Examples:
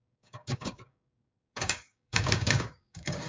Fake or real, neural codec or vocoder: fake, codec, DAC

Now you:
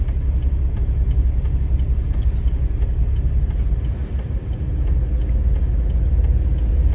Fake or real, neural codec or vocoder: real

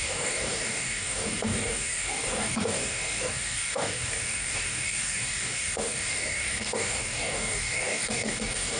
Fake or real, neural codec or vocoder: fake, codec, DAC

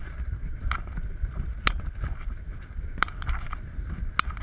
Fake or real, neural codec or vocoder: real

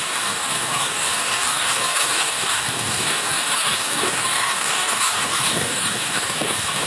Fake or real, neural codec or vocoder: fake, codec, DAC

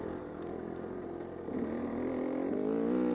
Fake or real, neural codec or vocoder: real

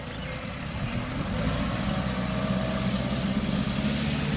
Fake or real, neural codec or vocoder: real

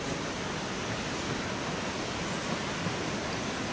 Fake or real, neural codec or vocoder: real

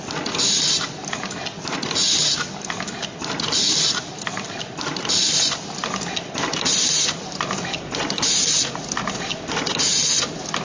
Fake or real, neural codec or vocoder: real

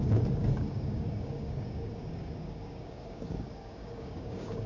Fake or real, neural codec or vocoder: fake, codec, DAC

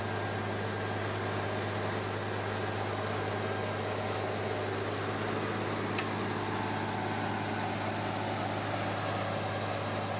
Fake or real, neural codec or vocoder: real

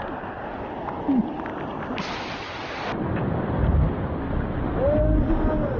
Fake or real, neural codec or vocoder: real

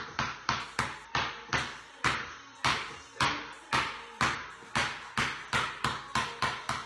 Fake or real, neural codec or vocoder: real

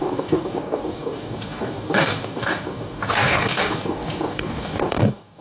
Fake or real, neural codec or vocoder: fake, codec, DAC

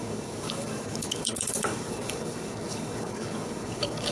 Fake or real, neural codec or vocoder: fake, codec, DAC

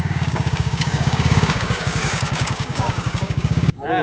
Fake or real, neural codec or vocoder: fake, codec, DAC